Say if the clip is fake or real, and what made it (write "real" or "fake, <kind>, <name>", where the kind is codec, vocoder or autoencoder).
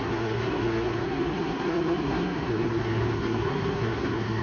fake, codec, SNAC